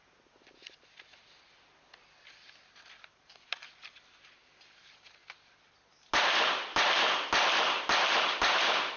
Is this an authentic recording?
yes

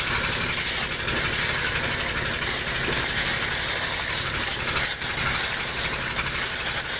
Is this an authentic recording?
yes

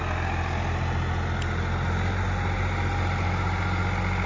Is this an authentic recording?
yes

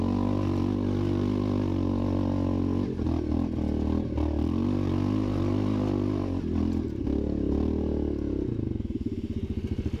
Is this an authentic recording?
yes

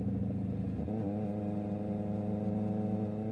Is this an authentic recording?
yes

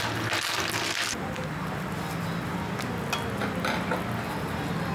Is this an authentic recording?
yes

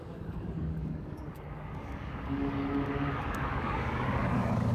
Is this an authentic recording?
no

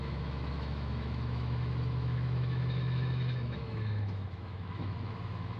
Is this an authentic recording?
no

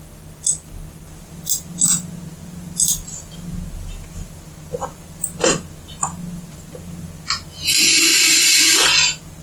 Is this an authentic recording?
yes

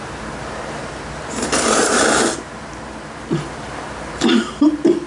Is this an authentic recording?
no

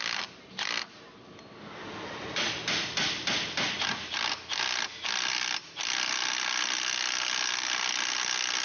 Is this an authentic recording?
yes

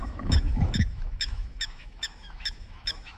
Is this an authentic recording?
no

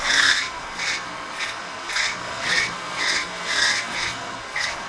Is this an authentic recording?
no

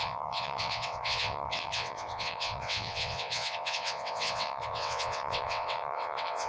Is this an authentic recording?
no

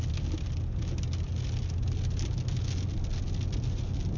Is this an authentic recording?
yes